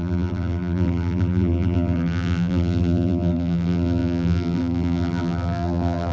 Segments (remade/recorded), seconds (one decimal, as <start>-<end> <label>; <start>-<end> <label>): 0.0-6.1 remade